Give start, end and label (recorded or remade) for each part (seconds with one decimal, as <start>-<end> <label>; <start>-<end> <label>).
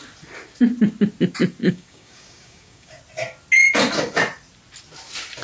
0.0-1.6 recorded; 1.6-3.0 remade; 3.0-5.4 recorded